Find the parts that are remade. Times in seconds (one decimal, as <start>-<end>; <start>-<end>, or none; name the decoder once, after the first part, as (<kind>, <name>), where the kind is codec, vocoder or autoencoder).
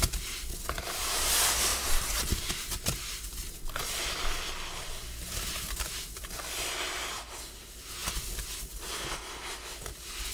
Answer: none